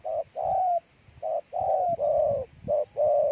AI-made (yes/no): no